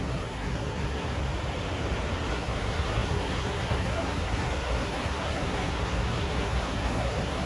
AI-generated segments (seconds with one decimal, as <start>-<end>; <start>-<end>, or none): 0.0-1.2; 2.3-7.5